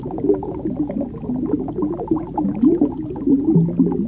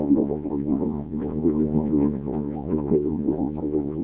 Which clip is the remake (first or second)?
second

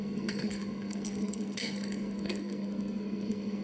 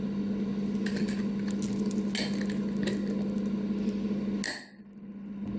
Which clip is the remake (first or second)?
first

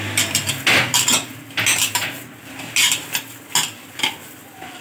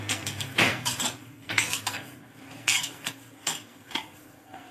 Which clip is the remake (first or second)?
second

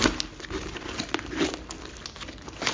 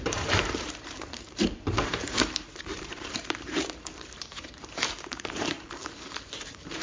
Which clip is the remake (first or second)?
second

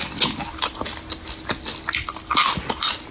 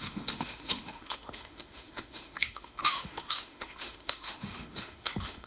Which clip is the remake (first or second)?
second